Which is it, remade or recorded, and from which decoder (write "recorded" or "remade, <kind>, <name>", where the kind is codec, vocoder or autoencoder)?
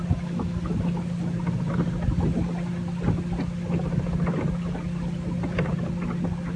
recorded